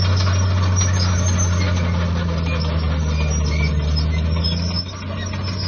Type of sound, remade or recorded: recorded